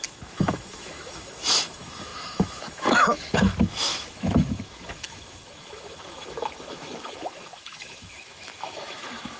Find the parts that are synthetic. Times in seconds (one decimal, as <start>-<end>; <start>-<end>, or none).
0.0-9.4